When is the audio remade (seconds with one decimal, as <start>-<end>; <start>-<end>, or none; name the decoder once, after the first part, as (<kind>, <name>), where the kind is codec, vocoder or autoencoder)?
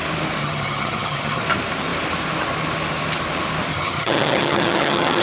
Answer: 0.4-1.4 (vocoder, HiFi-GAN); 3.7-5.2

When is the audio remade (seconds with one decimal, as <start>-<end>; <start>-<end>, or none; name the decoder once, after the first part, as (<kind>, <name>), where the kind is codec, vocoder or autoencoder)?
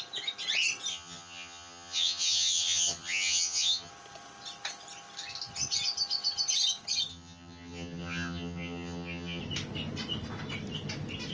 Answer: 0.9-3.9 (vocoder, HiFi-GAN); 7.1-9.4